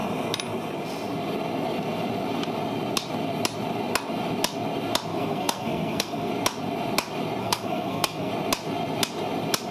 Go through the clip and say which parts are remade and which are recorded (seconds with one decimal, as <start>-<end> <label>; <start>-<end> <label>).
0.0-5.1 recorded; 5.1-6.3 remade; 6.3-7.4 recorded; 7.4-8.3 remade; 8.3-9.7 recorded